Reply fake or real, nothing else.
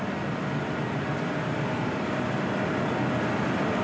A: real